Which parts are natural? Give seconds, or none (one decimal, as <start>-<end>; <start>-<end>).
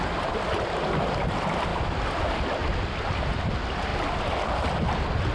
0.0-2.6; 3.4-5.3